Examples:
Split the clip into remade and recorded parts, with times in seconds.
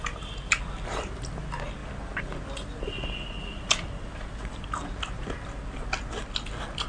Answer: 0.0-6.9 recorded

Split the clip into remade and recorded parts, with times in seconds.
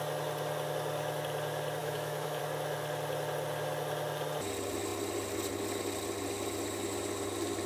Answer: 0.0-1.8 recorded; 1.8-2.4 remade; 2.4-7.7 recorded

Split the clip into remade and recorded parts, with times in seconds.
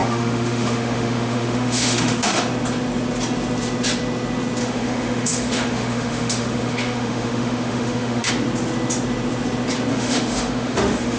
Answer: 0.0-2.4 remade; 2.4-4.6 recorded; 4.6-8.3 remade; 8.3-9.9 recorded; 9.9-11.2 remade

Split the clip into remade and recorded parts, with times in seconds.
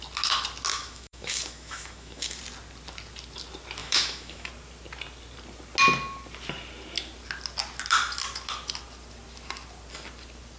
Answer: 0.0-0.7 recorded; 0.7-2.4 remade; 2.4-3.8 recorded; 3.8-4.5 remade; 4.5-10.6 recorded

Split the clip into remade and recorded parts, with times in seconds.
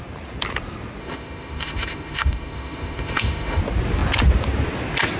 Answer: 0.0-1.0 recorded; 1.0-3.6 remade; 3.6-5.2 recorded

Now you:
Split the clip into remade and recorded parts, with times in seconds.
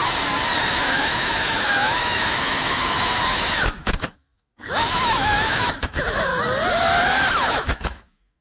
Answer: 0.0-0.7 recorded; 0.7-6.3 remade; 6.3-7.5 recorded; 7.5-8.4 remade